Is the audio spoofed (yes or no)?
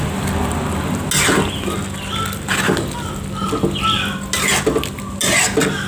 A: no